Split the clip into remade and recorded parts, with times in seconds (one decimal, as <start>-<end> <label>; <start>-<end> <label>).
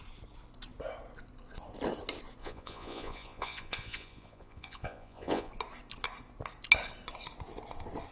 0.0-2.4 recorded; 2.4-5.5 remade; 5.5-8.1 recorded